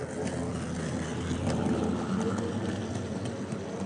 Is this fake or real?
real